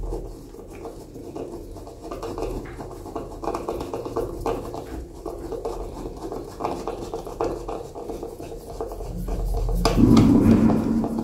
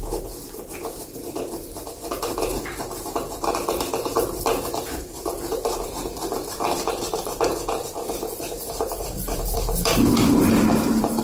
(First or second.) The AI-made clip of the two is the second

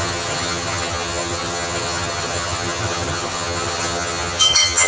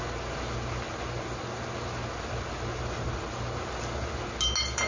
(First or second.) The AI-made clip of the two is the first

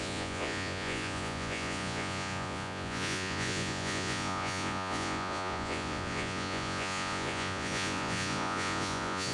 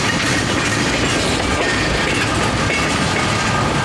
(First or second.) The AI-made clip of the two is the first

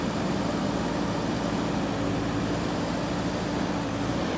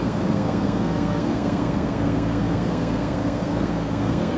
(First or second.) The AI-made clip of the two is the second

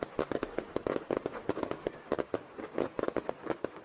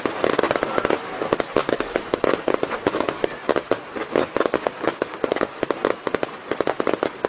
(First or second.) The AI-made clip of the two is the first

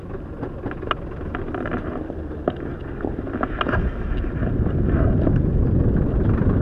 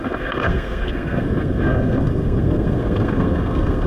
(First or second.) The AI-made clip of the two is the second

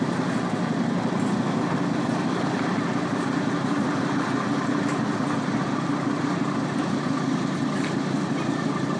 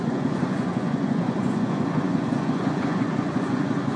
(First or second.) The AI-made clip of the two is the second